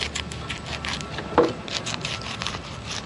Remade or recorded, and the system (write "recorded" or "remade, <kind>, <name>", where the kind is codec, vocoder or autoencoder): recorded